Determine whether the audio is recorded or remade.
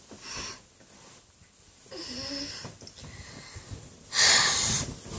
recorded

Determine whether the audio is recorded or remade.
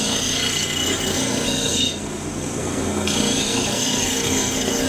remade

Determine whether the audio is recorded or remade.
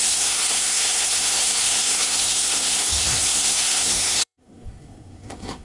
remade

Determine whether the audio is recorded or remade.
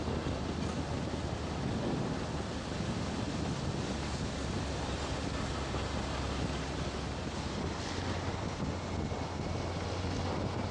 recorded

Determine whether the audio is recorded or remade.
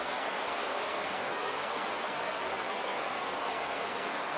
remade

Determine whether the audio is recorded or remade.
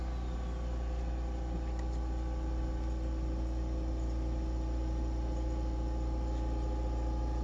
recorded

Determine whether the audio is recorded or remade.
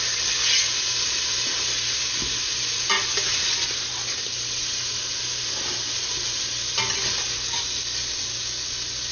recorded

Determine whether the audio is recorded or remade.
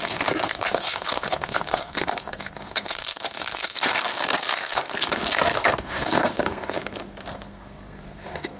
remade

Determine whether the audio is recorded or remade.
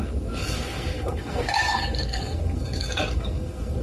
remade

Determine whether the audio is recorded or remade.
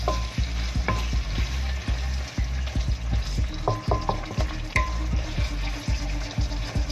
recorded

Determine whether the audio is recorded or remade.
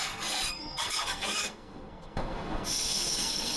remade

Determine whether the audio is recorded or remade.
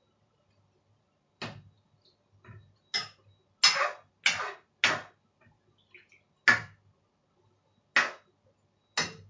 recorded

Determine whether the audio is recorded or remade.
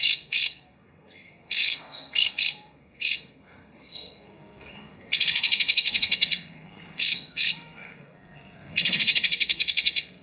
remade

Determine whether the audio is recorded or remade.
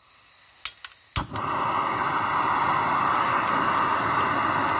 recorded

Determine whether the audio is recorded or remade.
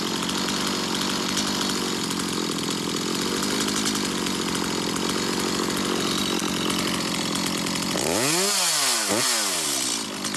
recorded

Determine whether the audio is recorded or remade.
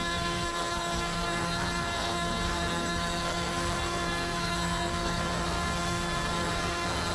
remade